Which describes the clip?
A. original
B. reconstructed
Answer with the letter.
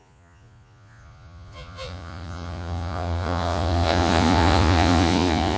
B